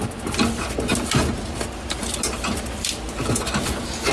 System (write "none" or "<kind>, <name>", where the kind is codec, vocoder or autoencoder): none